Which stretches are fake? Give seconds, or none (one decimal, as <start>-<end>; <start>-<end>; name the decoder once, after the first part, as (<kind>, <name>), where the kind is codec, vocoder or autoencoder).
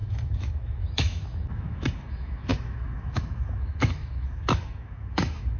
0.0-5.6 (autoencoder, DAC-VAE)